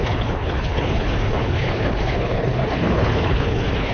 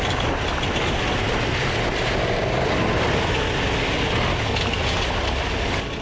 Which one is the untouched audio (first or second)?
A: second